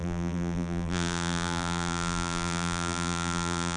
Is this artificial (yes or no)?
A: yes